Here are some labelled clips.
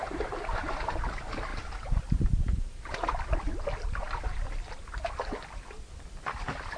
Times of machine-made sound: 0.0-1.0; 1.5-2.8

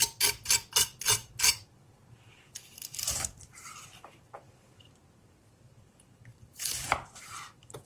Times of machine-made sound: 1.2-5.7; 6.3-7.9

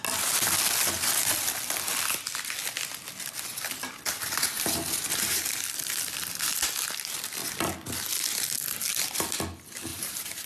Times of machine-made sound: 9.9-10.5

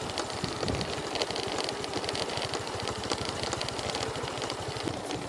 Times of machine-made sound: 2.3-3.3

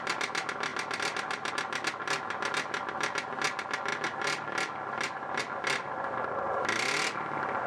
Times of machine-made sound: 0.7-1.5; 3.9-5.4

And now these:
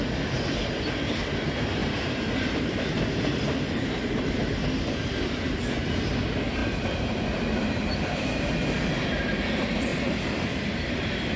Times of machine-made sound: 1.8-4.2; 9.9-10.7

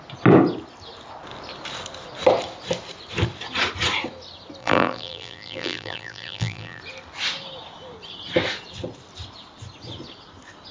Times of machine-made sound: 4.6-6.8

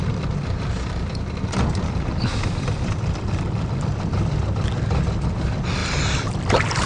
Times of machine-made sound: 0.0-4.1; 5.8-6.9